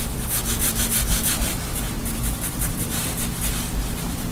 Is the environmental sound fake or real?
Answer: fake